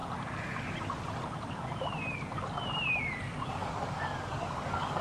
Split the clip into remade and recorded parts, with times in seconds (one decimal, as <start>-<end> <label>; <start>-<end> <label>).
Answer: 0.0-3.6 recorded; 3.6-5.0 remade